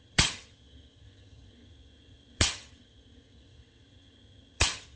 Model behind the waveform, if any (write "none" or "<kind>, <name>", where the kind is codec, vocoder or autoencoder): vocoder, HiFi-GAN